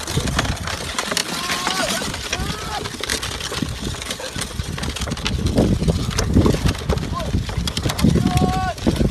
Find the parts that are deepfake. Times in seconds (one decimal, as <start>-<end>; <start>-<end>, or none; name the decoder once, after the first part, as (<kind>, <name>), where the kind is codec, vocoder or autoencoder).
1.2-2.1 (vocoder, BigVGAN v2)